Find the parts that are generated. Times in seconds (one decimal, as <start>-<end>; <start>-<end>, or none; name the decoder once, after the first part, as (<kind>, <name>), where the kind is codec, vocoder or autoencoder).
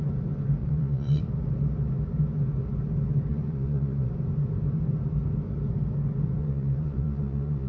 0.6-1.2 (vocoder, Vocos); 3.3-4.1; 6.4-7.7